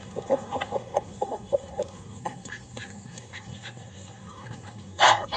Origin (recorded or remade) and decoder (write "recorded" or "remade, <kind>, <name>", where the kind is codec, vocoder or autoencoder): remade, codec, SNAC